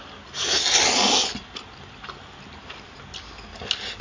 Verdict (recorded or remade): recorded